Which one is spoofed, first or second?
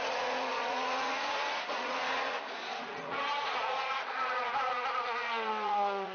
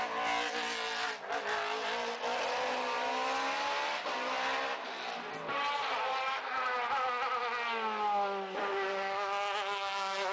first